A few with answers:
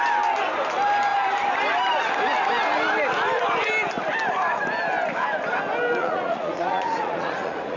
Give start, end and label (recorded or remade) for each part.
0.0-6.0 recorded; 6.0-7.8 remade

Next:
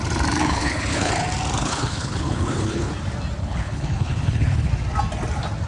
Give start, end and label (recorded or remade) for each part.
0.0-0.4 recorded; 0.4-1.1 remade; 1.1-1.6 recorded; 1.6-2.9 remade; 2.9-3.4 recorded; 3.4-4.7 remade; 4.7-5.7 recorded

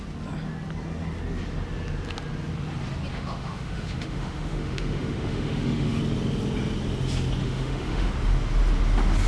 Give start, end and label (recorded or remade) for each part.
0.0-3.1 recorded; 3.1-6.0 remade; 6.0-7.4 recorded; 7.4-8.1 remade; 8.1-9.3 recorded

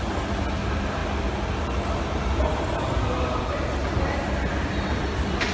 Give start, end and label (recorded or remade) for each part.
0.0-5.5 recorded

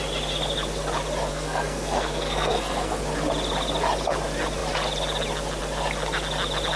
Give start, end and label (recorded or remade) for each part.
0.0-1.3 recorded; 1.3-3.0 remade; 3.0-6.8 recorded

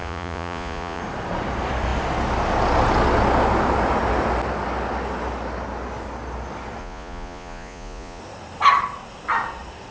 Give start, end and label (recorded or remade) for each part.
0.0-1.0 remade; 1.0-6.8 recorded; 6.8-8.2 remade; 8.2-9.9 recorded

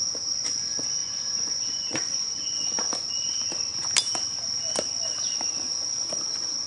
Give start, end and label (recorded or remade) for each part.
0.0-1.0 recorded; 1.0-3.1 remade; 3.1-6.7 recorded

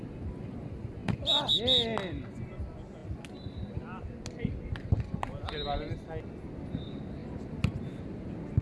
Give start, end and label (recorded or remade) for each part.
0.0-8.6 recorded